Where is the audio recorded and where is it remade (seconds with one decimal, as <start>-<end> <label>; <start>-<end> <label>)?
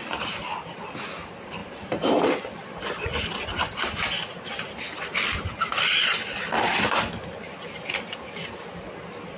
0.0-1.6 recorded; 1.6-2.3 remade; 2.3-9.4 recorded